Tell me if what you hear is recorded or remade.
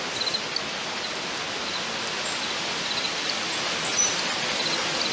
recorded